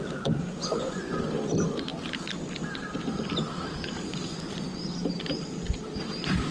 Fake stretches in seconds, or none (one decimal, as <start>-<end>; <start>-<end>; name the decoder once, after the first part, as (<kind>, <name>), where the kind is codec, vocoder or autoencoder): 0.6-1.2 (vocoder, Vocos); 4.1-4.8